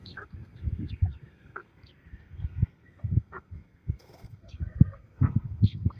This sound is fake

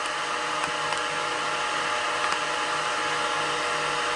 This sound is real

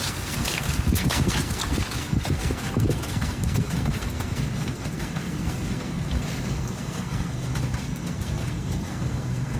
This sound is fake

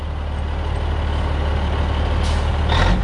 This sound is real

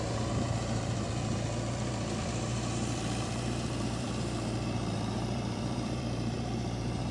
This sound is fake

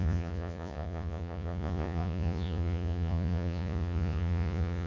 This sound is fake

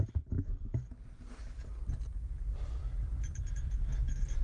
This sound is real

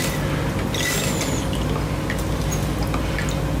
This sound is real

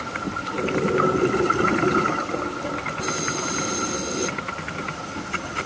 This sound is real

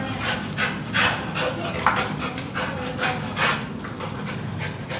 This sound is real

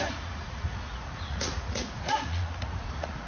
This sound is fake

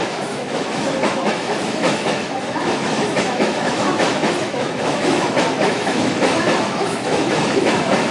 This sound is fake